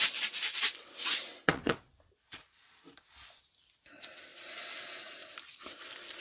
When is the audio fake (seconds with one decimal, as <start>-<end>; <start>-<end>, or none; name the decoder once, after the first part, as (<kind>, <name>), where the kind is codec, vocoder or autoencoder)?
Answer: 0.8-1.9 (vocoder, WaveNeXt)